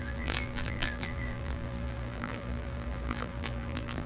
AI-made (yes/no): yes